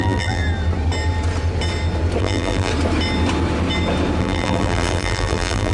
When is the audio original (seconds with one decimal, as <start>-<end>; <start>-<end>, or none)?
0.4-2.2; 2.7-4.2